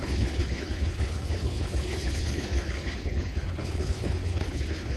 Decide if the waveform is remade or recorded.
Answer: remade